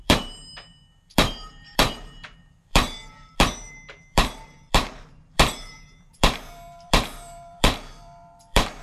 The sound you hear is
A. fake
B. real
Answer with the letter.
A